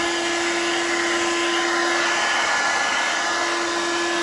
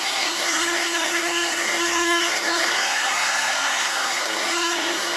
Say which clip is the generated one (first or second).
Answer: second